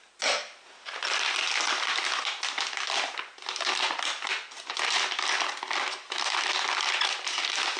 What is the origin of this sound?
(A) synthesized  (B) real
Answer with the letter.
B